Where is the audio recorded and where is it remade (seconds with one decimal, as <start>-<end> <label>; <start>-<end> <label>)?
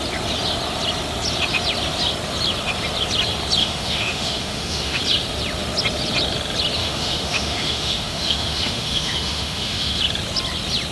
0.0-3.6 recorded; 3.6-5.0 remade; 5.0-6.8 recorded; 6.8-10.0 remade; 10.0-10.9 recorded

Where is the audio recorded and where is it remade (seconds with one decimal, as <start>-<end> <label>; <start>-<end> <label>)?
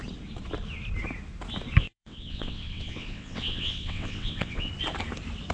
0.0-1.8 recorded; 1.8-4.7 remade; 4.7-5.5 recorded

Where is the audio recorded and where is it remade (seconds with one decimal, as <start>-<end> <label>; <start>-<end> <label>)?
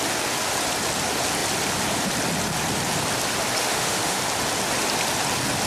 0.0-3.6 recorded; 3.6-4.2 remade; 4.2-5.7 recorded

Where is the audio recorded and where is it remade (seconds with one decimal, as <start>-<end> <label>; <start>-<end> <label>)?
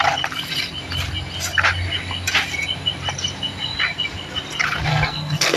0.0-4.9 recorded; 4.9-5.6 remade